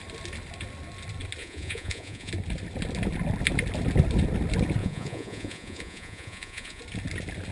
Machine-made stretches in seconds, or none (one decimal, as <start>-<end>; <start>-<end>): 1.4-2.3; 4.8-6.8